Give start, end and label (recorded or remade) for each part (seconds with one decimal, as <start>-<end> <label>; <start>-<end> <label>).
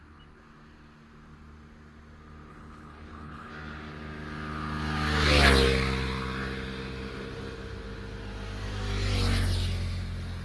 0.0-2.5 recorded; 2.5-3.5 remade; 3.5-10.4 recorded